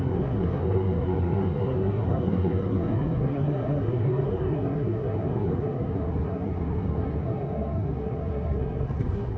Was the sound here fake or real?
fake